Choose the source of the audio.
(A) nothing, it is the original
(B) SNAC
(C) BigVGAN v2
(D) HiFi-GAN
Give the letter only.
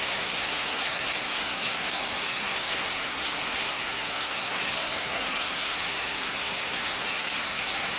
B